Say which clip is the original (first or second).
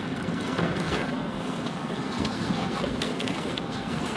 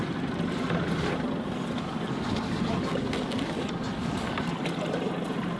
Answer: second